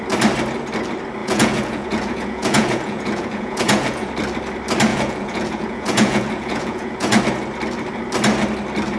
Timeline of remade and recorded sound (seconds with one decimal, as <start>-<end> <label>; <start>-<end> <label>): 0.0-1.2 recorded; 1.2-4.1 remade; 4.1-4.9 recorded; 4.9-7.2 remade; 7.2-9.0 recorded